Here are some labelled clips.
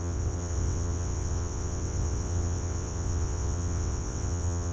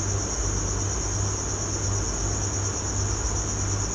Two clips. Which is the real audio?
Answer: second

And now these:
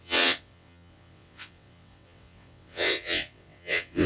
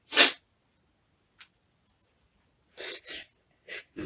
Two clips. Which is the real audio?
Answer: second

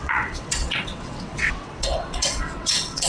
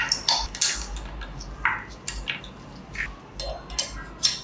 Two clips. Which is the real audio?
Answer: second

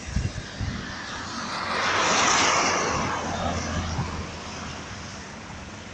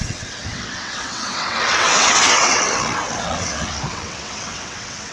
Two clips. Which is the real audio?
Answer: first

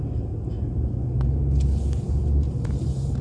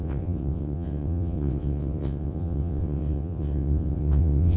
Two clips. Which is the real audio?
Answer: first